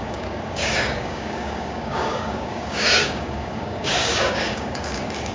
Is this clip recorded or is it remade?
remade